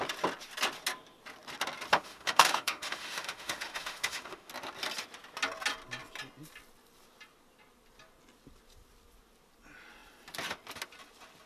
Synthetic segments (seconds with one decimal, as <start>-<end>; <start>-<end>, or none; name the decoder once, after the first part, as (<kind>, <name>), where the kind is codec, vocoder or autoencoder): 1.9-4.5 (autoencoder, DAC-VAE)